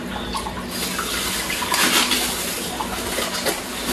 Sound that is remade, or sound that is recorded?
recorded